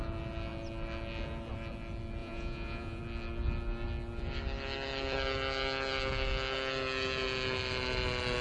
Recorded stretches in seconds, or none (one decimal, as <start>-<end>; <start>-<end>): 0.0-2.2; 3.0-8.4